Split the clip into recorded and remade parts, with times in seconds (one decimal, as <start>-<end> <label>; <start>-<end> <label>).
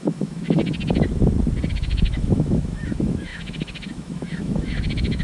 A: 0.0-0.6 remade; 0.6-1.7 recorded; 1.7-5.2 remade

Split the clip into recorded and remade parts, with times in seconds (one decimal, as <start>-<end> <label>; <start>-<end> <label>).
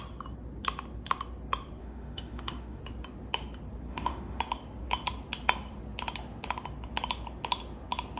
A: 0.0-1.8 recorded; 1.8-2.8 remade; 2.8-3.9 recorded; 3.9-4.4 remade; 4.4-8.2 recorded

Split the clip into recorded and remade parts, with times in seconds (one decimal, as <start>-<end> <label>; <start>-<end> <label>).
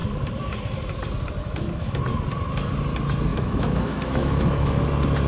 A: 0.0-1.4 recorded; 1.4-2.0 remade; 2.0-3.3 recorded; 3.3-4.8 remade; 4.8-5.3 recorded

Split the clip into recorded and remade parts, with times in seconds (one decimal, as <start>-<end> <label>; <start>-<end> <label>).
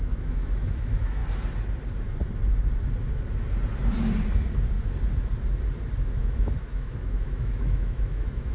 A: 0.0-1.2 remade; 1.2-6.0 recorded; 6.0-8.5 remade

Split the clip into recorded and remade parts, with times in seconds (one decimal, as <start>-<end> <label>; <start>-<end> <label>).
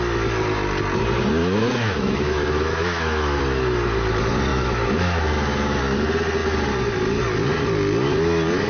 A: 0.0-1.4 recorded; 1.4-3.4 remade; 3.4-4.5 recorded; 4.5-5.8 remade; 5.8-8.7 recorded